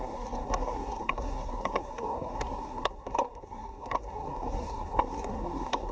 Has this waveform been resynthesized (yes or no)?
yes